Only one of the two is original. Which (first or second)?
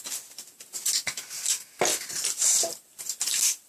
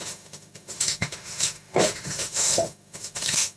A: first